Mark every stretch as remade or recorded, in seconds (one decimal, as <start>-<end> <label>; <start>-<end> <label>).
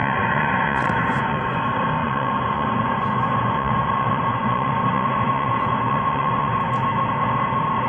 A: 0.0-1.6 remade; 1.6-2.0 recorded; 2.0-6.6 remade; 6.6-7.9 recorded